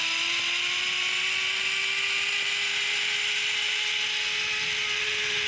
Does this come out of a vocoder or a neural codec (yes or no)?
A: no